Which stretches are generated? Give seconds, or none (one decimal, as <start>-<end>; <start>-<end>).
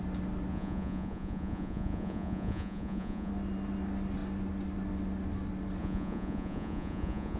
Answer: 0.5-3.3; 5.8-7.4